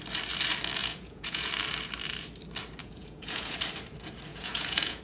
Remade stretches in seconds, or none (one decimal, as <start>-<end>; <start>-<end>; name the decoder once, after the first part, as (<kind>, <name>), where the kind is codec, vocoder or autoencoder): 0.8-1.5 (vocoder, Vocos); 2.8-3.6; 4.3-5.0